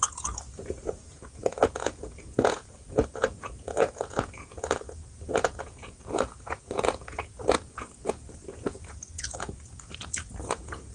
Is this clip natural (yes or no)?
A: no